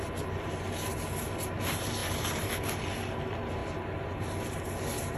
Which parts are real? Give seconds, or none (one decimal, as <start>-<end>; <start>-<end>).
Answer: 0.0-5.2